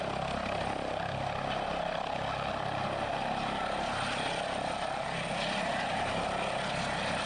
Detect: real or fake real